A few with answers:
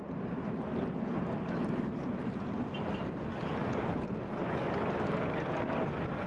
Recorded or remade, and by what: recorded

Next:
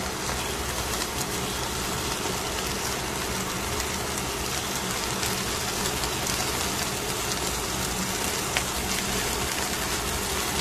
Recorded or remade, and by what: recorded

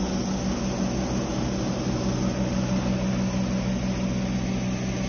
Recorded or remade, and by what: recorded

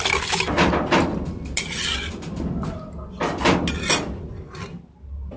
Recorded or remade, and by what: recorded